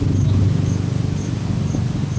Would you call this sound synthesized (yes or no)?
no